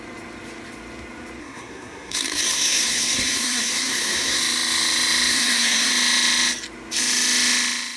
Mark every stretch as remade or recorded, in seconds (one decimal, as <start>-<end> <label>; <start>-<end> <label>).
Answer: 0.0-1.4 recorded; 1.4-4.4 remade; 4.4-5.3 recorded; 5.3-5.9 remade; 5.9-8.0 recorded